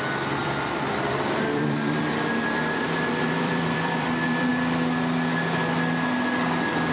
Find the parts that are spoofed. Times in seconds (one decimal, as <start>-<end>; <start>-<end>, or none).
0.4-4.5

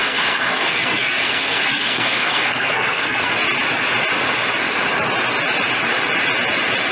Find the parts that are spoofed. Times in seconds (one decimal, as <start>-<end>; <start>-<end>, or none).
0.0-3.3

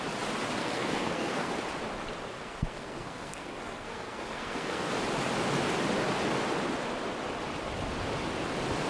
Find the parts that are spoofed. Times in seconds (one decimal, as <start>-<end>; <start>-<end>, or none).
0.6-1.5; 2.3-4.9

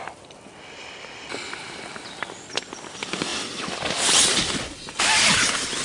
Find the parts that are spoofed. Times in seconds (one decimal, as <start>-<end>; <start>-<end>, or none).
none

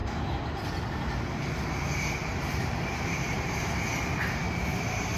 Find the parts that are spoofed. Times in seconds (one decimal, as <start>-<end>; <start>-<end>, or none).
0.0-0.7; 2.2-3.6